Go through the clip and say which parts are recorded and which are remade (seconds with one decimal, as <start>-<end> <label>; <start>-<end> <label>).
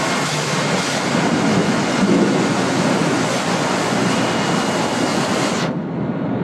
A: 0.0-1.6 recorded; 1.6-4.2 remade; 4.2-5.1 recorded; 5.1-5.6 remade; 5.6-6.4 recorded